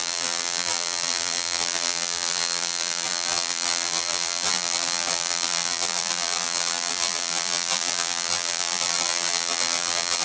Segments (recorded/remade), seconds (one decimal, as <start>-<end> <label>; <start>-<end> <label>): 0.0-10.2 remade